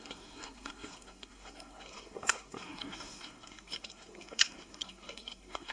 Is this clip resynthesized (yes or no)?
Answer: yes